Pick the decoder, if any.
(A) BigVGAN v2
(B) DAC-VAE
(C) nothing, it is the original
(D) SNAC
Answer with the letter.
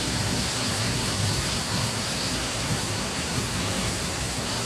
D